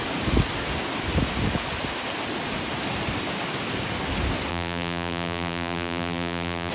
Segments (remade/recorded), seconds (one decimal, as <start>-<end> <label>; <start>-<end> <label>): 0.0-4.5 recorded; 4.5-6.7 remade